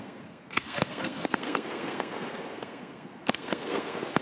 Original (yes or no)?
no